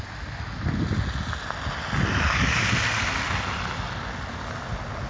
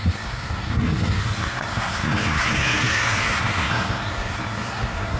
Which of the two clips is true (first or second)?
first